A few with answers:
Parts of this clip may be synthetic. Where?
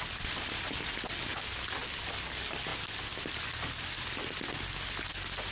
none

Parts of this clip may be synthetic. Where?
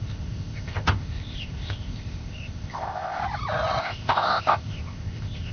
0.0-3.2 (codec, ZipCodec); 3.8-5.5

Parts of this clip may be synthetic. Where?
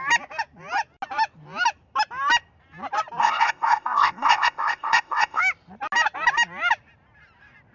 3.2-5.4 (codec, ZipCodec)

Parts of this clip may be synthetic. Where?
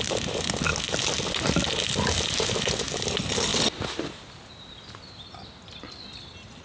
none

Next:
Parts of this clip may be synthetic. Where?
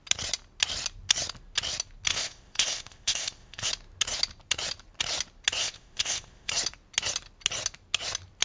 2.1-3.7 (codec, ZipCodec); 5.6-6.5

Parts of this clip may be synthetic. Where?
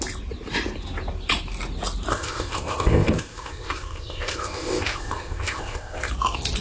2.1-6.1 (codec, ZipCodec)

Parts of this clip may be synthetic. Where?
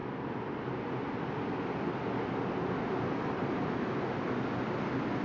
none